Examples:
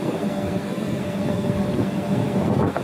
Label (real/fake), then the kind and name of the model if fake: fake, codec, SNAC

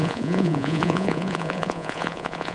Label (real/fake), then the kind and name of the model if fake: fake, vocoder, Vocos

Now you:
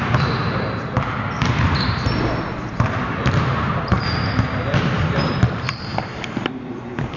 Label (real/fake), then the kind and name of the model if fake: fake, vocoder, BigVGAN v2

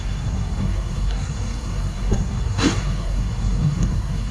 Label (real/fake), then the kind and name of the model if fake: fake, codec, SNAC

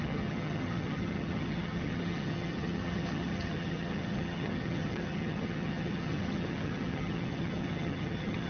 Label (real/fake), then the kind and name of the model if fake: fake, vocoder, HiFi-GAN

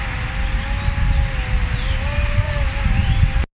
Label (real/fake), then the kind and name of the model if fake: real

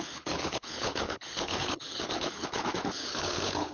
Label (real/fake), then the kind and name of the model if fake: fake, codec, HILCodec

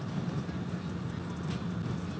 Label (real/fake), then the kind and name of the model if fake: real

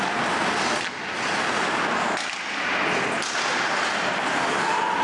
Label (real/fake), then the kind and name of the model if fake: real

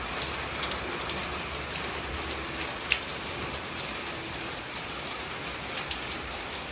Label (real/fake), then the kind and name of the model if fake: real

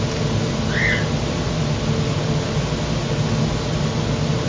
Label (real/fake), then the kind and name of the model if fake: real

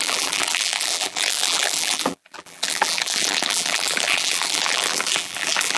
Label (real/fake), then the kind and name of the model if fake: fake, vocoder, BigVGAN v2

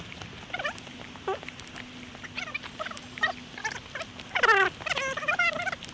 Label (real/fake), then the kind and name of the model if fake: real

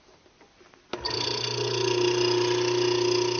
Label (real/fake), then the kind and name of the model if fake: real